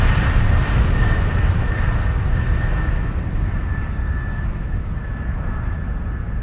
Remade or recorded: recorded